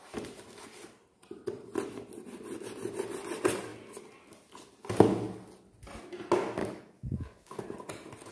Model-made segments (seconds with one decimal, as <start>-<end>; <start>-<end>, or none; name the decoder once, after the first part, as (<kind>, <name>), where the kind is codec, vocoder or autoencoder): 6.6-7.6 (codec, DAC)